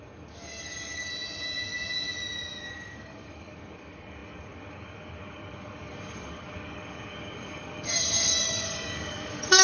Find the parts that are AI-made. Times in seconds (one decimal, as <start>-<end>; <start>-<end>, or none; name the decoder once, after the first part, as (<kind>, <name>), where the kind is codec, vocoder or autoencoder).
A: 0.0-1.1 (codec, DAC); 2.6-9.6